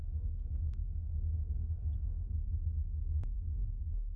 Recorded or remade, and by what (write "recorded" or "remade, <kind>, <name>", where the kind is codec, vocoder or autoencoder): remade, codec, SNAC